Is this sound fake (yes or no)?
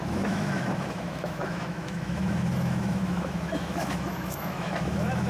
yes